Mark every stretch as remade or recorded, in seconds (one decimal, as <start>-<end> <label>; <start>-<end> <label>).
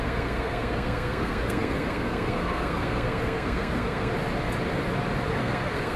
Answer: 0.0-4.1 remade; 4.1-5.4 recorded; 5.4-6.0 remade